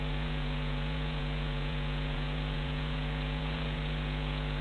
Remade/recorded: remade